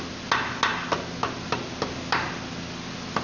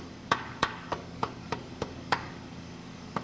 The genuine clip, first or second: first